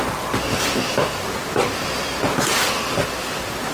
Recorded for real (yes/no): yes